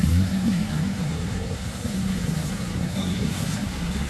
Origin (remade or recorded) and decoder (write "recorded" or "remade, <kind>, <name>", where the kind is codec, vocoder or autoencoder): remade, codec, SNAC